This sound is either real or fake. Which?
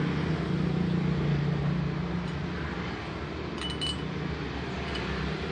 real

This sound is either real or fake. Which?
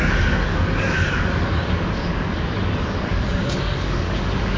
fake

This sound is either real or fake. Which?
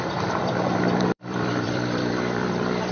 fake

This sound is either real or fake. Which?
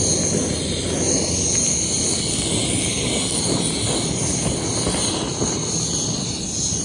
real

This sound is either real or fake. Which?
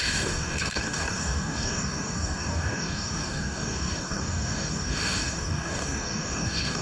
fake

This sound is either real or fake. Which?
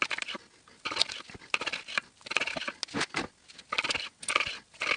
real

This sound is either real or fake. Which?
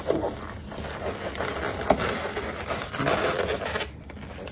real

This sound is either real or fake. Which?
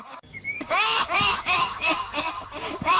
fake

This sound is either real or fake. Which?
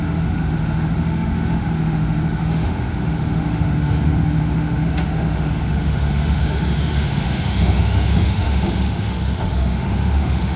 fake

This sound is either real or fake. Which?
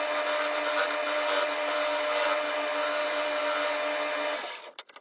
real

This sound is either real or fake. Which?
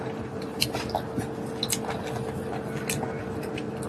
real